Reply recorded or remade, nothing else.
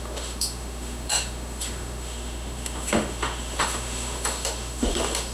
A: remade